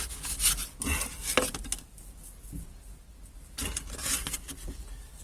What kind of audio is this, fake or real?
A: real